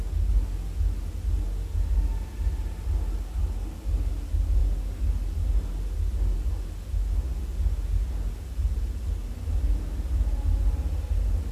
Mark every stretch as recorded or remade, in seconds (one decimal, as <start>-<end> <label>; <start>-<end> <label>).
0.0-11.5 recorded